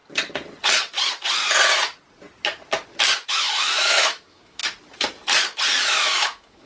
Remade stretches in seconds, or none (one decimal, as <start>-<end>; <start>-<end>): 3.3-4.6; 5.8-6.7